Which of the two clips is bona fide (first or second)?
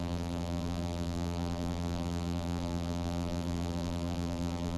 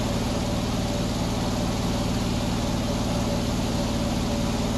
second